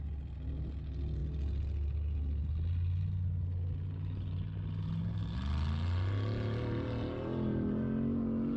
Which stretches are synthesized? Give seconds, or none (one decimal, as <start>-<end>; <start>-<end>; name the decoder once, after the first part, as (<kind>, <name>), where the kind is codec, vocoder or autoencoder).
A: none

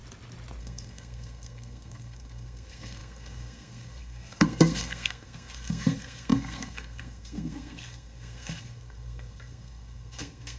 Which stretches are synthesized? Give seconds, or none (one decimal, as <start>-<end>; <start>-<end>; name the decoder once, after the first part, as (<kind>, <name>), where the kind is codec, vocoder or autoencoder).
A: 0.6-10.6 (codec, SNAC)

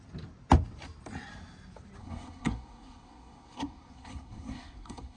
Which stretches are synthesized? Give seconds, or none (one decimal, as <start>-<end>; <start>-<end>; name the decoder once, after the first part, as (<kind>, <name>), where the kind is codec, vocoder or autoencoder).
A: 2.0-5.2 (codec, SNAC)

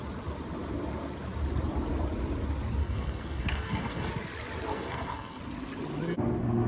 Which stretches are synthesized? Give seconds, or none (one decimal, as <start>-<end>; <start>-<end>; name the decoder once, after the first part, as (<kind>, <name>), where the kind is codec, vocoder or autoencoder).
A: 2.8-4.1 (codec, SNAC); 4.7-5.4

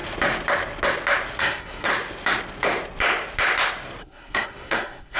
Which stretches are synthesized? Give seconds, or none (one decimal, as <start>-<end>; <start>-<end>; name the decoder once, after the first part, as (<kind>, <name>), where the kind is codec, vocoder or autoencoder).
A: 1.4-1.9 (codec, SNAC); 4.0-5.2

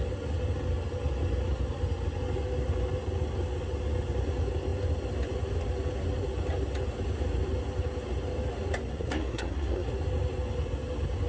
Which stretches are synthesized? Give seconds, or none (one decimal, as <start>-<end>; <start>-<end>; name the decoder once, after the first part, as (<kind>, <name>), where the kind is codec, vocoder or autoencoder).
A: 8.9-9.9 (codec, SNAC)

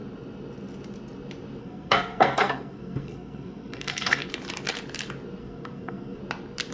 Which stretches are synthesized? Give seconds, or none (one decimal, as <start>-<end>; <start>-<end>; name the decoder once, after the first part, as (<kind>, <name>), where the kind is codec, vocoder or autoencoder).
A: 1.6-4.3 (codec, SNAC); 5.4-6.2

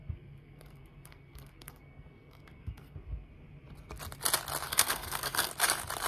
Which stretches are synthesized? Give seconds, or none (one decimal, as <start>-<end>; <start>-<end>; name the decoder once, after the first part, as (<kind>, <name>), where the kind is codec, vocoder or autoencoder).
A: 0.0-3.3 (codec, SNAC); 4.7-5.5